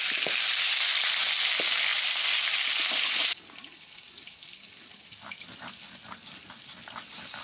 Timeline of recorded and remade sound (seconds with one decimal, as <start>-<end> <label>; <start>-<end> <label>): 0.0-7.4 recorded